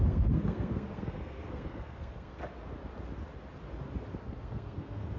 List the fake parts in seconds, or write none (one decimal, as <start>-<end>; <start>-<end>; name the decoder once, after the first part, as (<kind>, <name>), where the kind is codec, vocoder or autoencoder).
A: 0.0-2.4 (codec, SNAC); 4.2-5.2